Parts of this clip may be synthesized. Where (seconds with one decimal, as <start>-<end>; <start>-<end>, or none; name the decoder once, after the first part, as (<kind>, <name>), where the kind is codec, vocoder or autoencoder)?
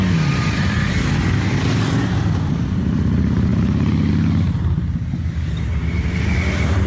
3.5-4.1 (vocoder, BigVGAN v2)